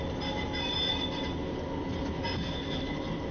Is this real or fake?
real